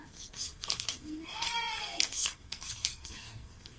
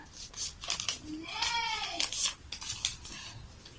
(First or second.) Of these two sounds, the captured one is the second